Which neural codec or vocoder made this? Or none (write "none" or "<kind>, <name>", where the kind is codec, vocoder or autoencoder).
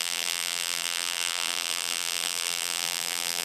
vocoder, BigVGAN v2